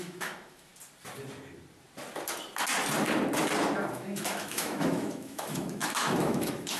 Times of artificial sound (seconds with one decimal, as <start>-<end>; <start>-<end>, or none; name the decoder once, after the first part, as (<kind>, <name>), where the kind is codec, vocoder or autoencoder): 0.0-0.7 (autoencoder, DAC-VAE); 3.9-6.8